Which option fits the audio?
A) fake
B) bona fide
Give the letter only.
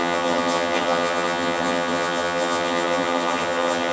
A